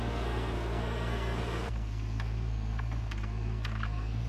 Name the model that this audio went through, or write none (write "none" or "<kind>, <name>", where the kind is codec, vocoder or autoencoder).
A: codec, SNAC